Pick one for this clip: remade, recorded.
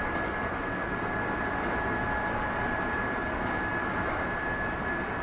recorded